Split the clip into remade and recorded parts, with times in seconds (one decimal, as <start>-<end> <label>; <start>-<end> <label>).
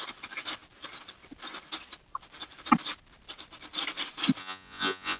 0.0-4.4 recorded; 4.4-5.2 remade